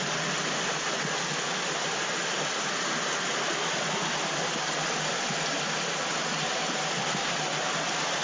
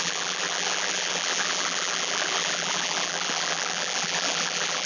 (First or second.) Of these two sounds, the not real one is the second